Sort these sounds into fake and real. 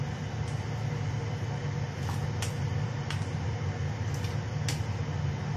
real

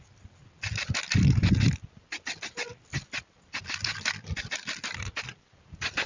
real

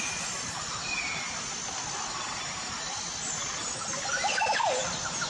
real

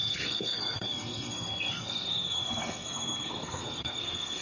fake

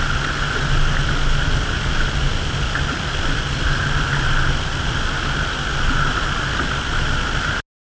real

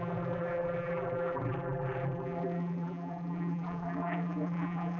fake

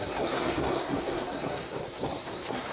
fake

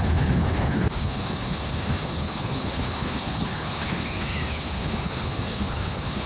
fake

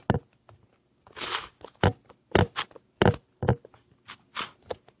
real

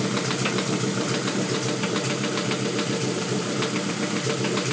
fake